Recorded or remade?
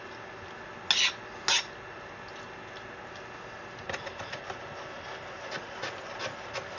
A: recorded